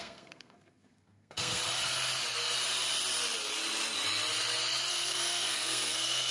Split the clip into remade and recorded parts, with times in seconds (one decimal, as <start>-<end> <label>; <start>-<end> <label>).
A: 0.0-1.6 remade; 1.6-4.9 recorded; 4.9-6.3 remade